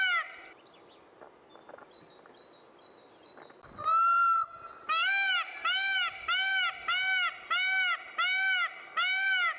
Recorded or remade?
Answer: recorded